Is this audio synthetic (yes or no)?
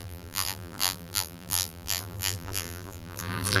yes